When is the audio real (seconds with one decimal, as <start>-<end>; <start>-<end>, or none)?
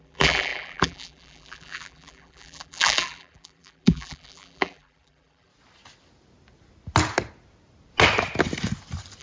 5.5-9.2